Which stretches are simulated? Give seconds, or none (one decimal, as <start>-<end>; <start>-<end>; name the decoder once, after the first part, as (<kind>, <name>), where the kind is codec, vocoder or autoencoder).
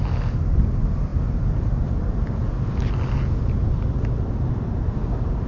none